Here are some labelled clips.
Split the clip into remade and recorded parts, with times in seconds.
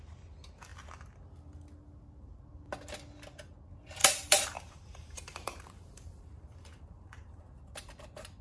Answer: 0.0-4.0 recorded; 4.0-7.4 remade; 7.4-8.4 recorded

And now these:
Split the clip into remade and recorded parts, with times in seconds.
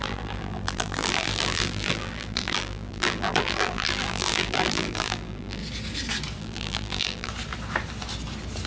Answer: 0.0-5.6 remade; 5.6-6.4 recorded; 6.4-7.3 remade; 7.3-8.7 recorded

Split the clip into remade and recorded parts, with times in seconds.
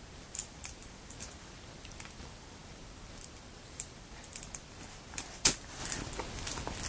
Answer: 0.0-5.8 remade; 5.8-6.9 recorded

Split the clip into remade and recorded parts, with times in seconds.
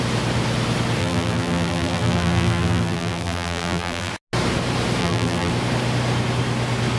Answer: 0.0-1.0 recorded; 1.0-4.1 remade; 4.1-5.0 recorded; 5.0-5.5 remade; 5.5-7.0 recorded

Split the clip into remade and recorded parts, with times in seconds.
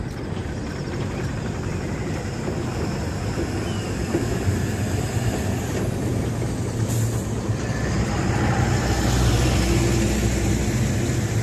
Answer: 0.0-11.4 recorded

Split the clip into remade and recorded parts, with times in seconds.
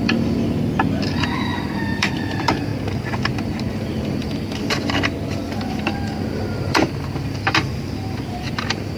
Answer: 0.0-2.7 remade; 2.7-3.7 recorded; 3.7-9.0 remade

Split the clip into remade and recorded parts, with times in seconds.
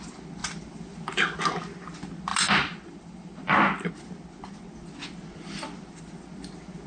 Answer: 0.0-0.4 recorded; 0.4-1.4 remade; 1.4-2.3 recorded; 2.3-3.9 remade; 3.9-6.9 recorded